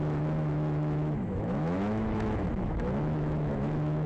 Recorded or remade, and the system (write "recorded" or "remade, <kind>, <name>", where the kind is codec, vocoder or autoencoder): remade, autoencoder, DAC-VAE